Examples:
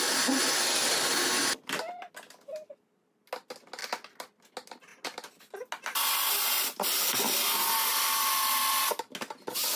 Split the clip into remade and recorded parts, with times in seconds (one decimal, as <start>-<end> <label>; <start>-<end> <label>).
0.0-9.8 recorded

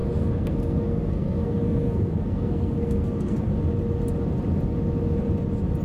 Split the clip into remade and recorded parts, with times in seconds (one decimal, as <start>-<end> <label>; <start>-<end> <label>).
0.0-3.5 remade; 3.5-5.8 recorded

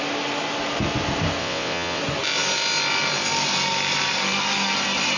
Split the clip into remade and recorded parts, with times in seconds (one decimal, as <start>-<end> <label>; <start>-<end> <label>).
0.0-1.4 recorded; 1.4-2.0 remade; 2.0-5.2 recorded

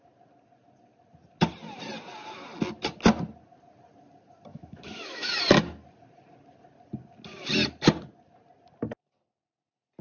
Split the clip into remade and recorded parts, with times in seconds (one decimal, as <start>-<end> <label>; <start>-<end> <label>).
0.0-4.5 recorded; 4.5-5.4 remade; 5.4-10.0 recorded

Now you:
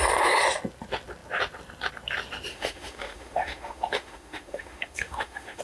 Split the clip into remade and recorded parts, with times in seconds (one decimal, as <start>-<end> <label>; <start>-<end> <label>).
0.0-2.5 recorded; 2.5-5.6 remade

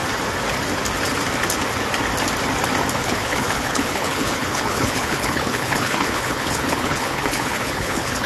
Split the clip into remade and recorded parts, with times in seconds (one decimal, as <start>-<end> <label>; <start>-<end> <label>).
0.0-3.0 recorded; 3.0-8.3 remade

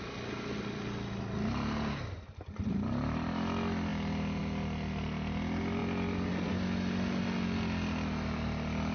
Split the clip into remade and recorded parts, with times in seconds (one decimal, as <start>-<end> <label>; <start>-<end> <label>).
0.0-8.9 recorded

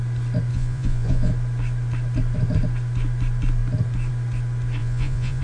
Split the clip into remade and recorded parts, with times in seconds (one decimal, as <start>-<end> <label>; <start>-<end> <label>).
0.0-0.5 recorded; 0.5-1.3 remade; 1.3-4.8 recorded; 4.8-5.4 remade